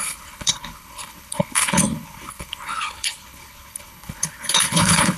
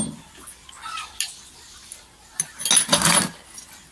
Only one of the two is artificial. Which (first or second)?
first